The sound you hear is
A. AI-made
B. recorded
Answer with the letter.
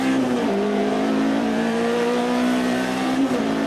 A